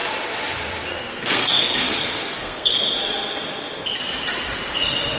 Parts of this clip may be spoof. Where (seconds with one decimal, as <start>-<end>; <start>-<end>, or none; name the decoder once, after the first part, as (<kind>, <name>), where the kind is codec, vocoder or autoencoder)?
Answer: 0.9-2.7 (codec, SNAC)